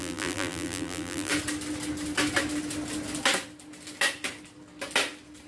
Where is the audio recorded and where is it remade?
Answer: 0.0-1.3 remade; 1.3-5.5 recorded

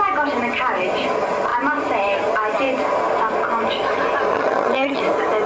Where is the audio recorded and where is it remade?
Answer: 0.0-4.3 recorded; 4.3-5.0 remade; 5.0-5.5 recorded

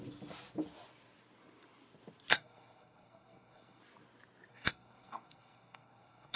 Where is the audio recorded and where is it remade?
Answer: 0.0-2.3 recorded; 2.3-3.8 remade; 3.8-4.5 recorded; 4.5-6.4 remade